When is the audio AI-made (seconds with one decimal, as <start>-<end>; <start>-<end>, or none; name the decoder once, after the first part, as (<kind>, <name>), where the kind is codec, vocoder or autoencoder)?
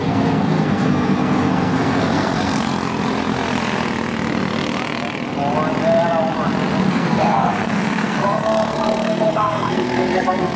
0.0-2.7 (codec, SNAC); 6.9-10.6